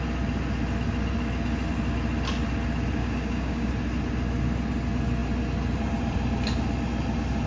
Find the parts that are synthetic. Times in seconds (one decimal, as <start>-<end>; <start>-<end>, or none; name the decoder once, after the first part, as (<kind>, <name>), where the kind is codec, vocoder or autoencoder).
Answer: 3.0-3.7 (codec, DAC)